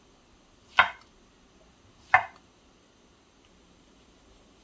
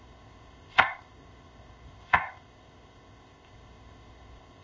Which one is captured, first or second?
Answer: first